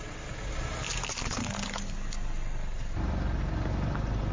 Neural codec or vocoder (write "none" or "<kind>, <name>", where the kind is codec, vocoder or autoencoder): none